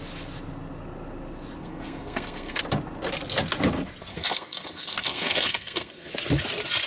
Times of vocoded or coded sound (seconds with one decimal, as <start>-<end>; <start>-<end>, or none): 1.6-2.6; 4.1-6.1